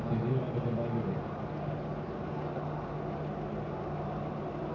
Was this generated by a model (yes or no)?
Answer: no